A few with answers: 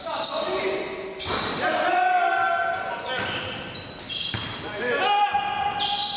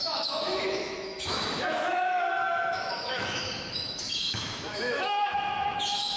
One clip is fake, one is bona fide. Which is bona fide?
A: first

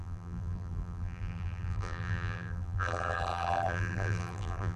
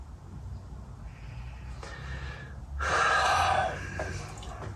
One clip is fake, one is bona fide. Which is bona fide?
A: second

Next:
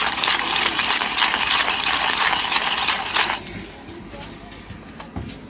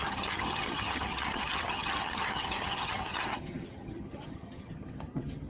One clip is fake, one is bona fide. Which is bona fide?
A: first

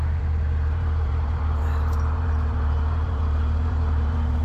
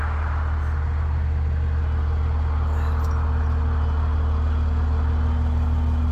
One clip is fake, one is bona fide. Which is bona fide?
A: second